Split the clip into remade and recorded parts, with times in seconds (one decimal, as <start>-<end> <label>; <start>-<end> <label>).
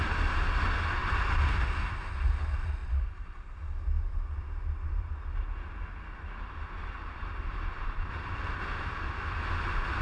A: 0.0-10.0 recorded